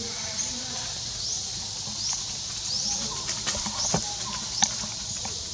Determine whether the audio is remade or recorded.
remade